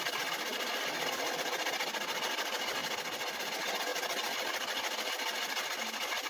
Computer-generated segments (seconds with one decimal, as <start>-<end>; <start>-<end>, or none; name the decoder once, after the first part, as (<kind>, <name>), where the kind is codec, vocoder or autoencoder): none